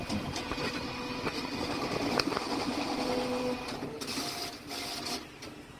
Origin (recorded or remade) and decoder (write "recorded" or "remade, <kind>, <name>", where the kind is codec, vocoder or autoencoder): recorded